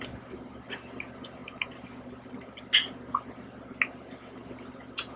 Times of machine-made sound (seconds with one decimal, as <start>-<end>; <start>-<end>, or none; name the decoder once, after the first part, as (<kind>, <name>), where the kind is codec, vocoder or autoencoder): none